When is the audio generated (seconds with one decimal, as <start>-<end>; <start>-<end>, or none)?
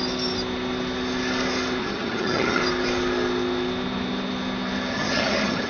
1.8-2.6; 4.9-5.7